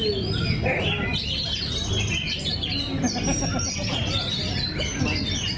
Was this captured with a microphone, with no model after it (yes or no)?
yes